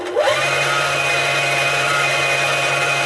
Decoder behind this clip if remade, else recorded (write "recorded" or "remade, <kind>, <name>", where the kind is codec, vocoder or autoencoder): recorded